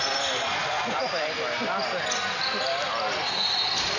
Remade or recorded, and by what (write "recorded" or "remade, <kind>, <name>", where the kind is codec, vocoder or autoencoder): recorded